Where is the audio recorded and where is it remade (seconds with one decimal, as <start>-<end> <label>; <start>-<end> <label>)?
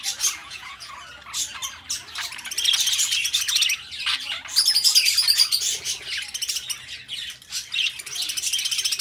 0.0-0.4 recorded; 0.4-0.9 remade; 0.9-9.0 recorded